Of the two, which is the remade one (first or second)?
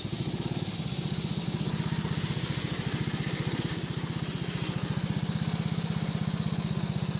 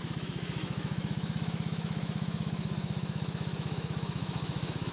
second